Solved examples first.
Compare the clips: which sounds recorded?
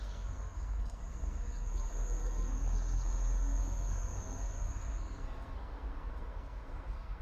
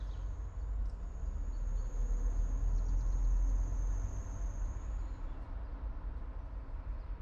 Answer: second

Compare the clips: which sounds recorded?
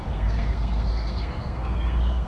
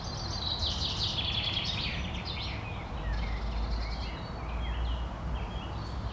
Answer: second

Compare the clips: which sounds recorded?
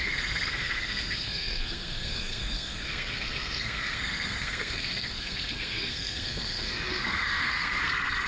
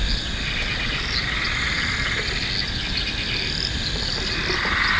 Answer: second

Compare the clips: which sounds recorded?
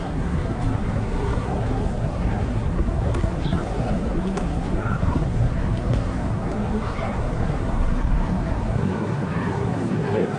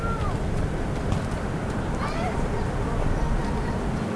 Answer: second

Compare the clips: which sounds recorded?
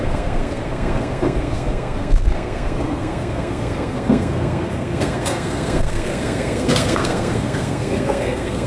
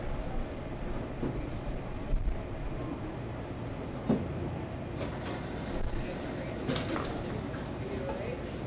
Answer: second